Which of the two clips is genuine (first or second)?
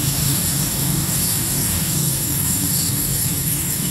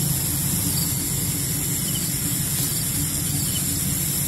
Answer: second